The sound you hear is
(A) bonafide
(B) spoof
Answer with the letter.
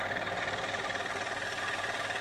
B